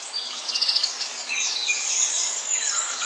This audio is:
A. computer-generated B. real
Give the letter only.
A